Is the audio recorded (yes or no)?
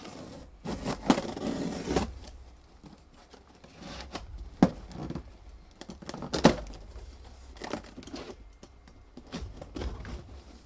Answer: yes